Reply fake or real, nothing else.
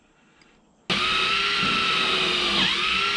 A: real